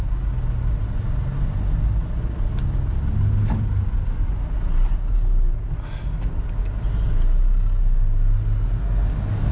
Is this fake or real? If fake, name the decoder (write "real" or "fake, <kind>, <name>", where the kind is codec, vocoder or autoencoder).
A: real